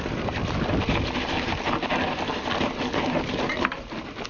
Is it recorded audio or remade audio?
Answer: recorded